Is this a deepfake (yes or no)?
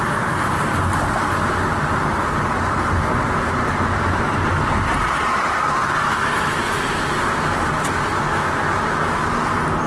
no